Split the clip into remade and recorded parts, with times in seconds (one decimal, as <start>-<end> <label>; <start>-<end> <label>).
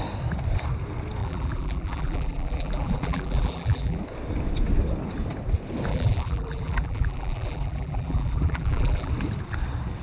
0.0-1.2 recorded; 1.2-4.0 remade; 4.0-5.9 recorded; 5.9-9.1 remade; 9.1-10.0 recorded